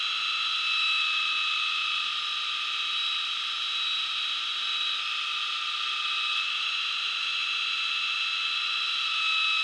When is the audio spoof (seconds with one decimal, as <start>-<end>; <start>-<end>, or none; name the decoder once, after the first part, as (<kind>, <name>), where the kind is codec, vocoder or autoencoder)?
none